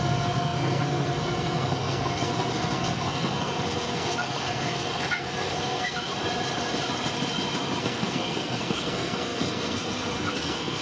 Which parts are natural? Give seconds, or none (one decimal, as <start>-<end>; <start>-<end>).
6.1-7.8